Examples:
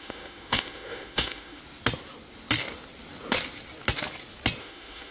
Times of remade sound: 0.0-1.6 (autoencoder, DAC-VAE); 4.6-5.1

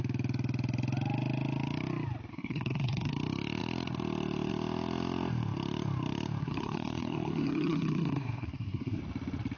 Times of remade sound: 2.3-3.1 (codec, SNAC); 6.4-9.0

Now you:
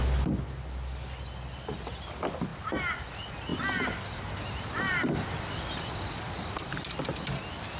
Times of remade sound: none

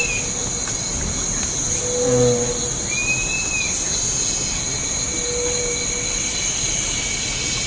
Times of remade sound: none

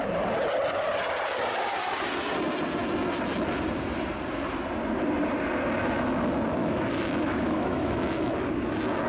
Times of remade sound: 6.6-8.5 (autoencoder, DAC-VAE)

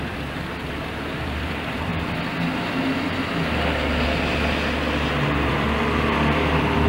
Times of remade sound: 0.0-1.9 (vocoder, BigVGAN v2); 5.5-6.9

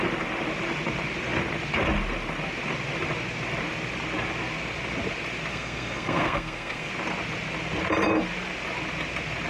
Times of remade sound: 5.5-6.9 (codec, SNAC)